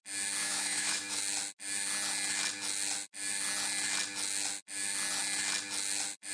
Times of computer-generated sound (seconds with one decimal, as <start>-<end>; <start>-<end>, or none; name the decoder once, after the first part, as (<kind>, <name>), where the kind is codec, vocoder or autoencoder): 0.4-1.2 (autoencoder, DAC-VAE)